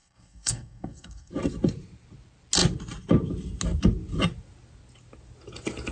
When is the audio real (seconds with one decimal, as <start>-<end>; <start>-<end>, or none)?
1.3-5.9